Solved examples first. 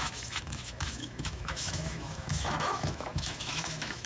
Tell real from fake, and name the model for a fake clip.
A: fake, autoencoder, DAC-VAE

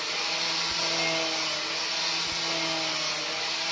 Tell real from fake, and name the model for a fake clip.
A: real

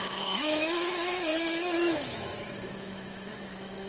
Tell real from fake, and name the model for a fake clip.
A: fake, autoencoder, DAC-VAE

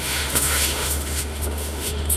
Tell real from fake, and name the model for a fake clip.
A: fake, autoencoder, DAC-VAE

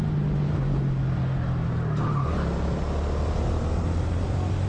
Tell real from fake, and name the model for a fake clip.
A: real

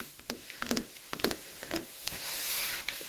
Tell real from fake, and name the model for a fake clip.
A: fake, autoencoder, DAC-VAE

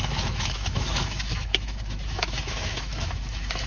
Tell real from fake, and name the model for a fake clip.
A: fake, autoencoder, DAC-VAE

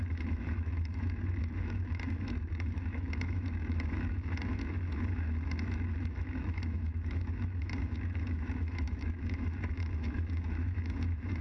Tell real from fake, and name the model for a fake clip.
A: fake, autoencoder, DAC-VAE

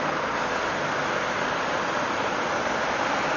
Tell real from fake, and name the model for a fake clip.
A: real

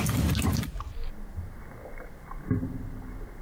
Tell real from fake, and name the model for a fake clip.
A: real